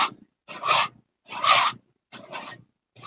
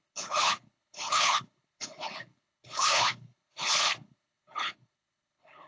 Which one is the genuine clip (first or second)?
first